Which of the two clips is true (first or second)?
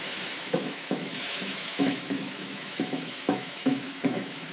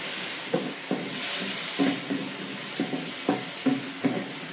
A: second